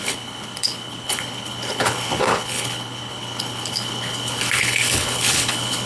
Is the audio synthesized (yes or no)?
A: yes